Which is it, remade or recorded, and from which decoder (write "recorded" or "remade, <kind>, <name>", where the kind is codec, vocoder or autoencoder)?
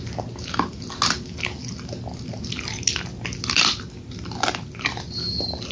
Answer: recorded